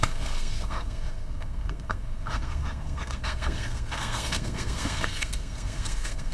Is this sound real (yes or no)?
no